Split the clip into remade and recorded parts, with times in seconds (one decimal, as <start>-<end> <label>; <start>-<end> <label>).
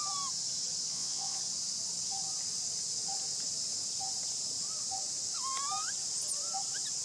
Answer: 0.0-0.9 recorded; 0.9-1.4 remade; 1.4-7.0 recorded